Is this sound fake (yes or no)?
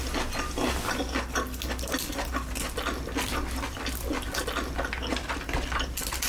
no